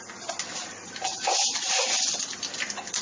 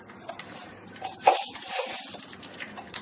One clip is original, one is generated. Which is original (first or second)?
first